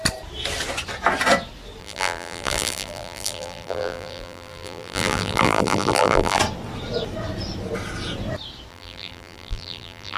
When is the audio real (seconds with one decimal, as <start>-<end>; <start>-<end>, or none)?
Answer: 0.0-1.8; 6.4-8.7